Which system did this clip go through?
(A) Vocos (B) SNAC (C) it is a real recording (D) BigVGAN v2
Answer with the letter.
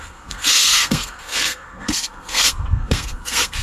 B